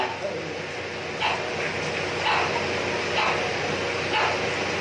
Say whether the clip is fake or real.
real